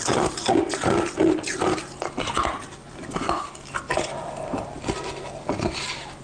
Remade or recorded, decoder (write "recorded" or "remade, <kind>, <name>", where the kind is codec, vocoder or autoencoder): recorded